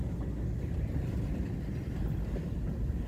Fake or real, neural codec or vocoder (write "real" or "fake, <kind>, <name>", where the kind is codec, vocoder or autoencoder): real